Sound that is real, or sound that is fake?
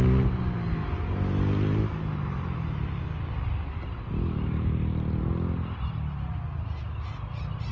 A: real